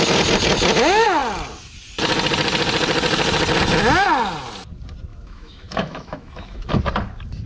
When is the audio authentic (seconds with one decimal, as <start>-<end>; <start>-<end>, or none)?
0.0-5.1; 6.8-7.5